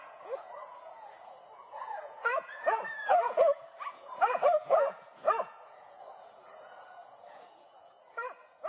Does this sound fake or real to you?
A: fake